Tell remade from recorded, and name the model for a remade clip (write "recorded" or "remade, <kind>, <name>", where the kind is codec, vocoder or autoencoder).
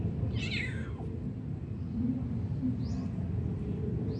recorded